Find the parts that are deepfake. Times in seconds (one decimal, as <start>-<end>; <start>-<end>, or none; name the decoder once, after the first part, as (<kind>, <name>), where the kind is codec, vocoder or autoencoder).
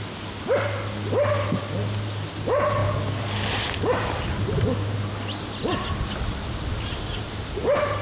none